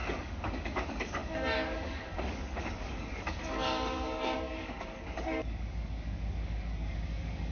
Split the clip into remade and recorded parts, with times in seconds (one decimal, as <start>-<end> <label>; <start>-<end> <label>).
0.0-7.5 remade